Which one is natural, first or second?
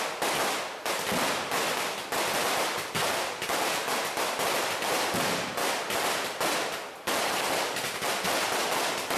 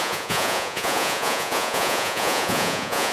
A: first